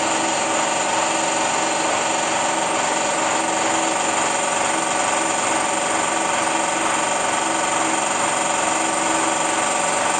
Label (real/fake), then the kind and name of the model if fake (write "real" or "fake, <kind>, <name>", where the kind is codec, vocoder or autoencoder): real